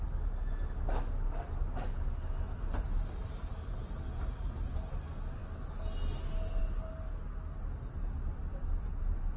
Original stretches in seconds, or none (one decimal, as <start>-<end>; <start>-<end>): 0.0-9.4